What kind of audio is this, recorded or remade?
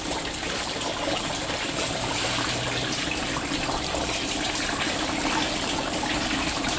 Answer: remade